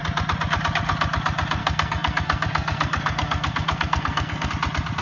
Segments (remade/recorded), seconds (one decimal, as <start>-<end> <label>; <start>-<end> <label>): 0.0-1.6 recorded; 1.6-4.5 remade; 4.5-5.0 recorded